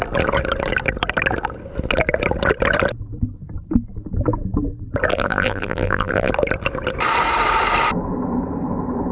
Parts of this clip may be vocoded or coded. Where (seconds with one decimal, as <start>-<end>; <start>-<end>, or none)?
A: 5.1-6.3